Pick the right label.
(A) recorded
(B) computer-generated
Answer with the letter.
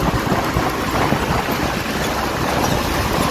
A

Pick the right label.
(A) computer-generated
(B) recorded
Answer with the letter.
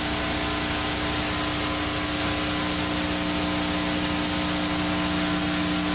B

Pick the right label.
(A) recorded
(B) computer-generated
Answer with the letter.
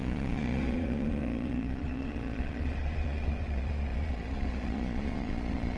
B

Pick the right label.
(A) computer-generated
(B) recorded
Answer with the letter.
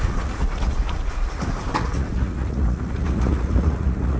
A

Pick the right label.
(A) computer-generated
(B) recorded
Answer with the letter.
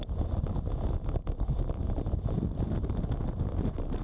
B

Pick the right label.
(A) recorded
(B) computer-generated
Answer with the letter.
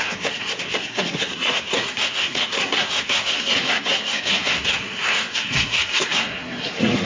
B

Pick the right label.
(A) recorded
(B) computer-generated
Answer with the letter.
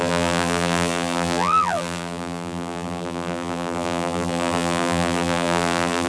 B